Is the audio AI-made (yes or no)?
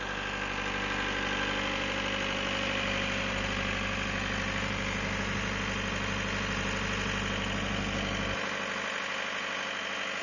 no